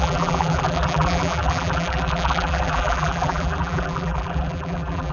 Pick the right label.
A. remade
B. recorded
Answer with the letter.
A